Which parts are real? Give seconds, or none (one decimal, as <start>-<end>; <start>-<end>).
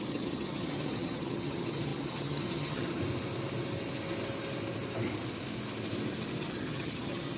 3.0-6.4